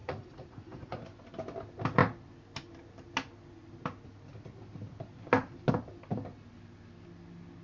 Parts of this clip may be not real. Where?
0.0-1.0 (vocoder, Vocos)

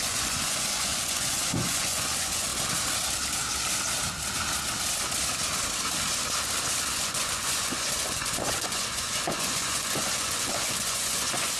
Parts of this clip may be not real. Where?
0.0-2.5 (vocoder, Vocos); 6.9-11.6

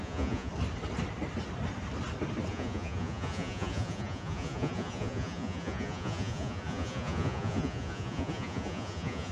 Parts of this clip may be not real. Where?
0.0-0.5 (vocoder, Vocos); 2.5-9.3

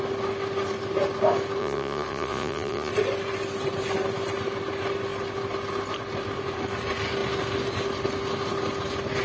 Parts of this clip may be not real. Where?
1.6-2.9 (vocoder, Vocos)

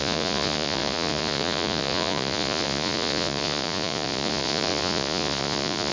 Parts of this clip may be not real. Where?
0.0-5.9 (vocoder, Vocos)

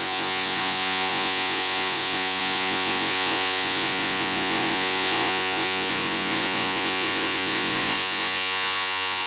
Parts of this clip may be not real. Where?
0.0-9.3 (vocoder, Vocos)

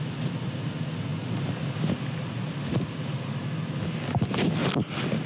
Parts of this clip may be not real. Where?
none

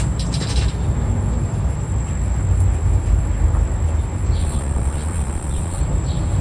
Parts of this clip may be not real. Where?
4.4-5.8 (vocoder, Vocos)